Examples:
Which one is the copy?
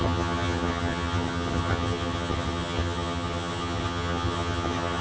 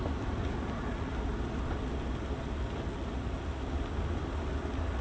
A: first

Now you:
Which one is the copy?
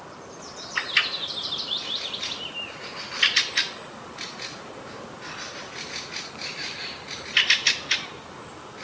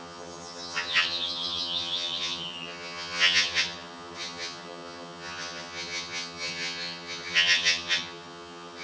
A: second